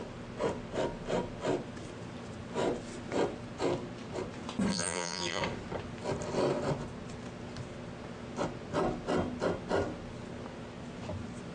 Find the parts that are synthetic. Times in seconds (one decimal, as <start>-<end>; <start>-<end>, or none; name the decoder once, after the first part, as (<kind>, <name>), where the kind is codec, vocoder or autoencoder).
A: 4.7-5.4 (vocoder, BigVGAN v2)